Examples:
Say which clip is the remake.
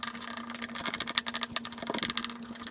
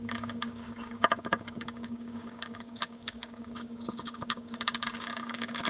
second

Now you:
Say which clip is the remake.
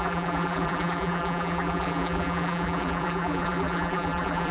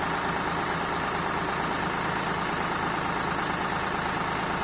first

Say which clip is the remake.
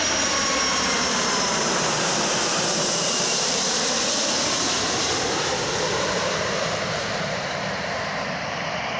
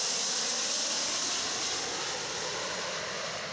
first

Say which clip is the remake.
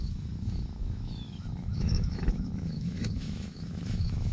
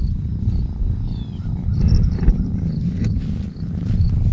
first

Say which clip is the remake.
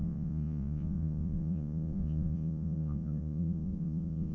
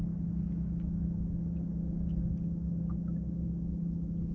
first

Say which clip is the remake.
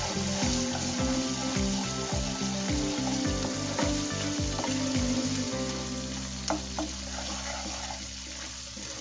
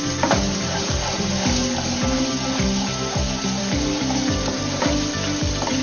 second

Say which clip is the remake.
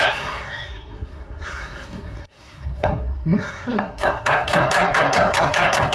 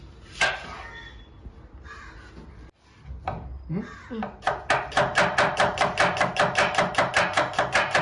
first